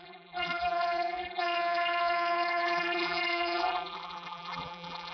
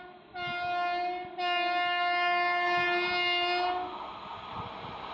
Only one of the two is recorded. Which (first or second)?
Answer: second